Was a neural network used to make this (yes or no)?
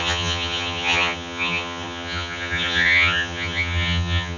yes